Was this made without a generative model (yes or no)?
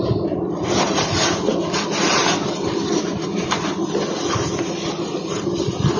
yes